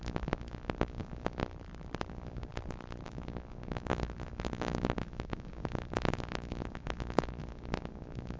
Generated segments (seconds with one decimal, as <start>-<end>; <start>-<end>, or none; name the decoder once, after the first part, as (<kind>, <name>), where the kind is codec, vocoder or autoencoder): 0.0-1.4 (codec, DAC); 2.1-2.5; 3.1-8.4